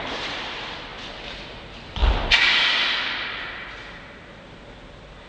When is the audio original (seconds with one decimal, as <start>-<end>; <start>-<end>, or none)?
0.9-1.4; 2.0-4.0